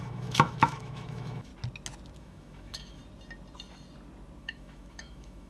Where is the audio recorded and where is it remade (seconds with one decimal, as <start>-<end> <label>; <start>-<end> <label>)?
0.0-1.5 remade; 1.5-2.2 recorded; 2.2-3.0 remade; 3.0-4.4 recorded; 4.4-5.5 remade